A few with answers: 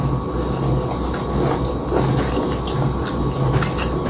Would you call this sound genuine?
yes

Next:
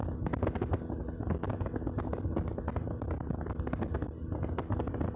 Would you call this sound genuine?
yes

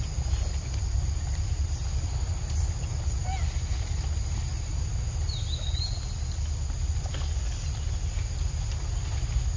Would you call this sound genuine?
yes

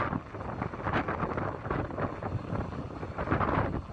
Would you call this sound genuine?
yes